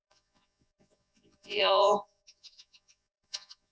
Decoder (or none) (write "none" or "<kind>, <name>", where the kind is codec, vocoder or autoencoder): vocoder, Vocos